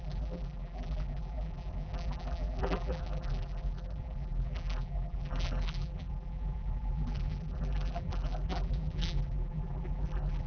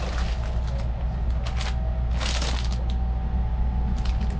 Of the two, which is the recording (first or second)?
second